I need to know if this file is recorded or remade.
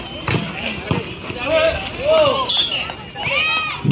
recorded